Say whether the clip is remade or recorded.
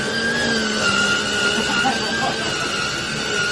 recorded